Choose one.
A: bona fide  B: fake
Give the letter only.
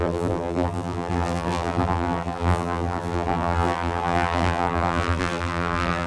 B